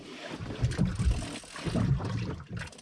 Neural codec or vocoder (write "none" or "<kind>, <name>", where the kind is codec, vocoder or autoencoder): none